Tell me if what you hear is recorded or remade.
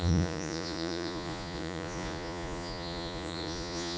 remade